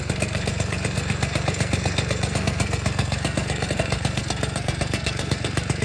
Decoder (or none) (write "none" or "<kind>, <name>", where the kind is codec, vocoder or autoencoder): codec, SNAC